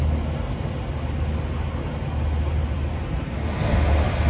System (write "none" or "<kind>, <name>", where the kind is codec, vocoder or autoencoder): none